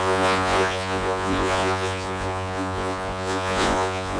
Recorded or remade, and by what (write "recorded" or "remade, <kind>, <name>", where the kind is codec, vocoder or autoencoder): remade, vocoder, Vocos